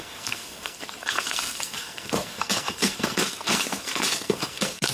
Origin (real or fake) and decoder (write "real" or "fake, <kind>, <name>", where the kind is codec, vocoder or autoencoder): fake, codec, SNAC